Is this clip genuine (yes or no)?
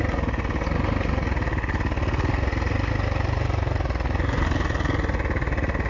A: yes